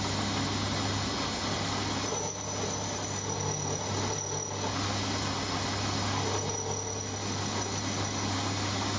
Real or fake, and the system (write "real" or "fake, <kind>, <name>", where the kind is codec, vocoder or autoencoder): real